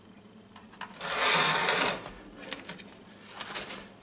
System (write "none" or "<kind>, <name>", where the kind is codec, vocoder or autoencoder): none